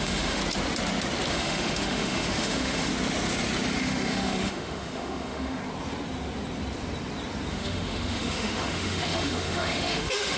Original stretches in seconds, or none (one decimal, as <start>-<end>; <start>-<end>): 0.4-1.3; 2.9-3.8; 5.6-7.5